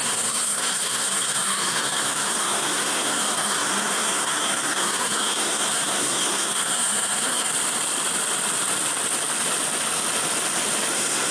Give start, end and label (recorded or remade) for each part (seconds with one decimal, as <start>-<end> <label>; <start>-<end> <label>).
0.0-7.5 remade; 7.5-10.9 recorded; 10.9-11.3 remade